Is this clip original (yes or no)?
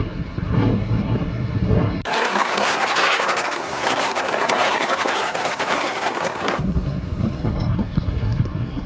no